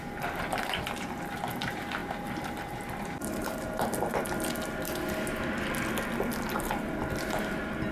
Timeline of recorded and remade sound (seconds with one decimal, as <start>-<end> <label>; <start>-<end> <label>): 0.0-2.0 recorded; 2.0-4.1 remade; 4.1-7.9 recorded